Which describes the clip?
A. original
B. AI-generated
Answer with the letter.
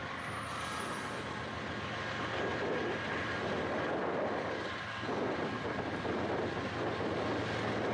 A